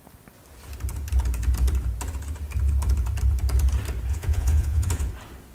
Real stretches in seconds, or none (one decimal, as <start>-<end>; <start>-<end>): 0.0-4.1; 5.1-5.5